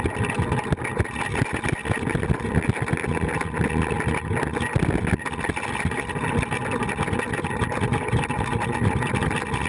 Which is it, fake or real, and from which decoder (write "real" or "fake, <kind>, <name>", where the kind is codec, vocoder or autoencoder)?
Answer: real